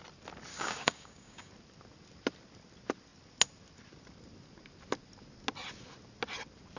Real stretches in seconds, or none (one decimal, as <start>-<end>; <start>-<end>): 0.0-0.5; 1.5-6.8